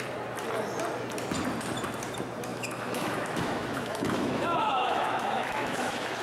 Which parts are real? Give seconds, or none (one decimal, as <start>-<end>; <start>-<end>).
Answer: 0.0-2.5